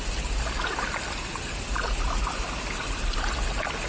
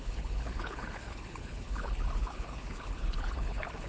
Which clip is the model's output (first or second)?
second